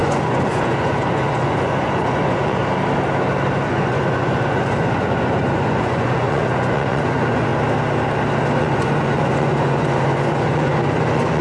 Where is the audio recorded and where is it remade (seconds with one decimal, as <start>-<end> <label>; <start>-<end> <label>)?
0.0-2.6 remade; 2.6-3.6 recorded; 3.6-7.5 remade; 7.5-8.6 recorded; 8.6-11.4 remade